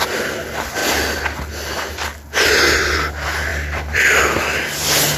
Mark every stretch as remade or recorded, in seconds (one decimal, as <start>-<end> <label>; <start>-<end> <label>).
0.0-3.5 recorded; 3.5-4.2 remade; 4.2-5.2 recorded

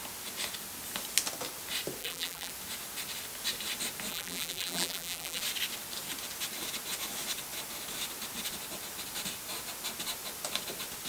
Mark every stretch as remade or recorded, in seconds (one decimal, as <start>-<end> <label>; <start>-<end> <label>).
0.0-2.0 recorded; 2.0-2.5 remade; 2.5-4.1 recorded; 4.1-5.4 remade; 5.4-11.1 recorded

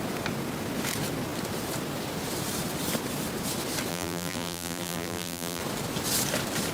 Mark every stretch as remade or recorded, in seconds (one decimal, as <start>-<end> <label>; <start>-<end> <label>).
0.0-3.9 recorded; 3.9-5.6 remade; 5.6-6.7 recorded

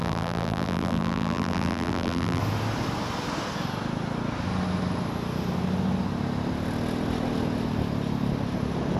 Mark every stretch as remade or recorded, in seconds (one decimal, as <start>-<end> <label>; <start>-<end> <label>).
0.0-2.4 remade; 2.4-9.0 recorded